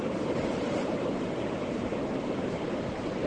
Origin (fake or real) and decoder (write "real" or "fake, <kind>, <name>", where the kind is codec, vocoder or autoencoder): fake, vocoder, BigVGAN v2